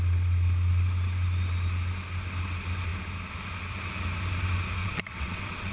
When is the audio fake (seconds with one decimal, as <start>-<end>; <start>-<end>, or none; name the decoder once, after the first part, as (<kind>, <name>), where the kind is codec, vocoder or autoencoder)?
4.8-5.7 (vocoder, WaveNeXt)